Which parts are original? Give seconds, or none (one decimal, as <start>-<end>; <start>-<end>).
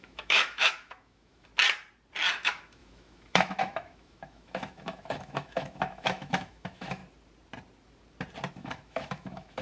1.5-2.3; 7.0-8.5